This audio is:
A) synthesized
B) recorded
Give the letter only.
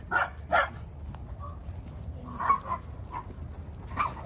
B